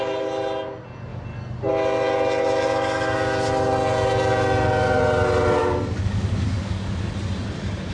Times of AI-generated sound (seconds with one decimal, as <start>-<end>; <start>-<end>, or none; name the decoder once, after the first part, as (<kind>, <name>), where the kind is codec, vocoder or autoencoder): 5.6-7.1 (codec, DAC)